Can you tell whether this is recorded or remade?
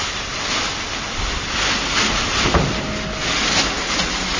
recorded